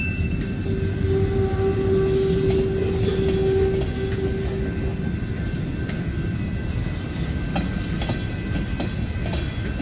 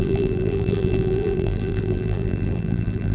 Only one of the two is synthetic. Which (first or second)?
second